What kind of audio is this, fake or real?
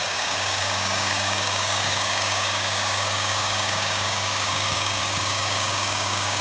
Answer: fake